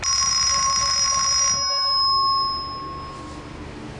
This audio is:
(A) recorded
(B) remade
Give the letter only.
A